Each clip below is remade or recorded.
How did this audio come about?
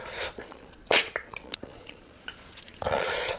remade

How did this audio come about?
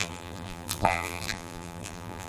remade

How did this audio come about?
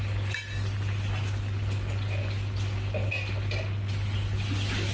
recorded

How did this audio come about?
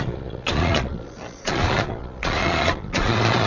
remade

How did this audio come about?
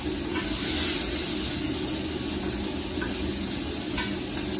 recorded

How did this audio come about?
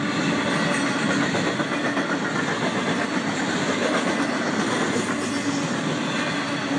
recorded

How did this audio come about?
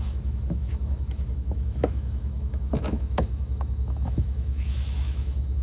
remade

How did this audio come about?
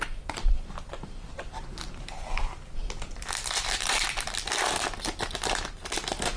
recorded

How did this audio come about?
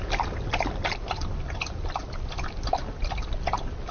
recorded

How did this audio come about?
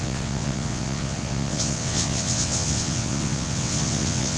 remade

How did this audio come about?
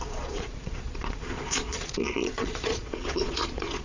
remade